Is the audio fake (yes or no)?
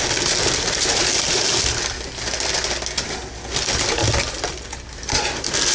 no